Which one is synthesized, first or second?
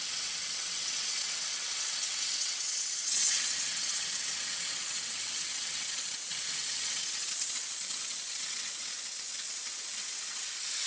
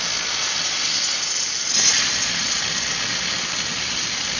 first